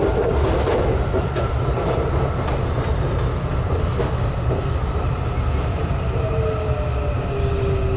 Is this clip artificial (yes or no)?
no